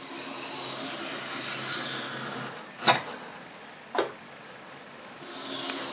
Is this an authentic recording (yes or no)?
yes